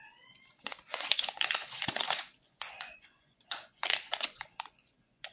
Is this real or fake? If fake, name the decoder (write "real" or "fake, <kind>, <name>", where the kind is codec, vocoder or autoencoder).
fake, vocoder, Vocos